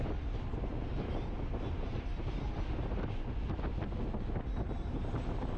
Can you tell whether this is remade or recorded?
recorded